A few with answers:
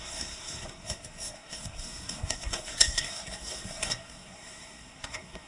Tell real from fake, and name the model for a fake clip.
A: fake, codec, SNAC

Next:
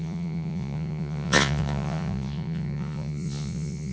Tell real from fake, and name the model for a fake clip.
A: fake, vocoder, Vocos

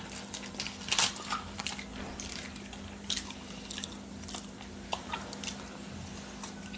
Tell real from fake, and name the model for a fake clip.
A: real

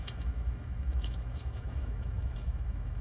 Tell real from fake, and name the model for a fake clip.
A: fake, autoencoder, DAC-VAE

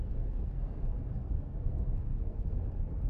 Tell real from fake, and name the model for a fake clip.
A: fake, codec, SNAC